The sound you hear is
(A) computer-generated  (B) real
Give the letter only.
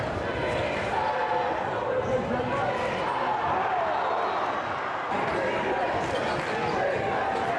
B